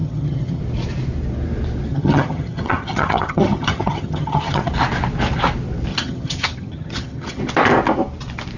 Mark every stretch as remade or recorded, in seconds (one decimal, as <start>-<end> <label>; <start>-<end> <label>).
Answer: 0.0-0.6 remade; 0.6-1.9 recorded; 1.9-4.7 remade; 4.7-5.9 recorded; 5.9-7.4 remade; 7.4-8.6 recorded

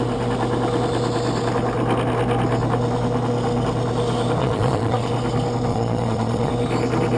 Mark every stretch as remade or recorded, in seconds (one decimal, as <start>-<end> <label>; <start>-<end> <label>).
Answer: 0.0-4.4 recorded; 4.4-5.1 remade; 5.1-5.7 recorded; 5.7-6.5 remade; 6.5-7.2 recorded

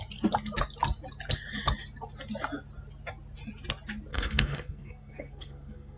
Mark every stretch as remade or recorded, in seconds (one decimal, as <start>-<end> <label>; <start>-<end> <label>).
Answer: 0.0-4.1 recorded; 4.1-6.0 remade

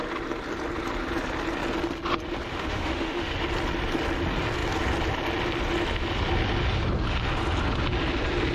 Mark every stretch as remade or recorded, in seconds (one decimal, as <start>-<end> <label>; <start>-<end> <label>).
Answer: 0.0-2.5 recorded; 2.5-3.3 remade; 3.3-8.5 recorded

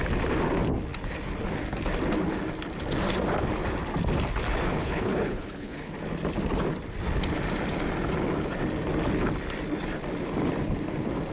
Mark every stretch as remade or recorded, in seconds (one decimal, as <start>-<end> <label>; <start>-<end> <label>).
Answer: 0.0-4.8 recorded; 4.8-5.9 remade; 5.9-11.3 recorded